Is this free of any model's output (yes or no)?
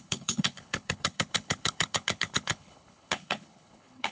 no